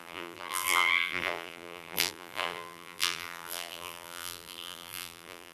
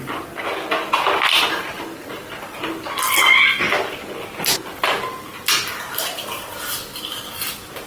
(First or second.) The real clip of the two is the second